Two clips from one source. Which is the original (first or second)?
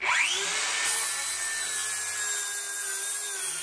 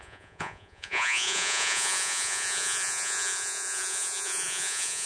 first